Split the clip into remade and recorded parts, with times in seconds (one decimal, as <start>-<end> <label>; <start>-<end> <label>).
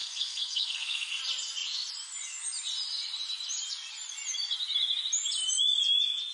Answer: 0.0-1.2 remade; 1.2-6.3 recorded